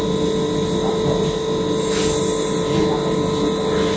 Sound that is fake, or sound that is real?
real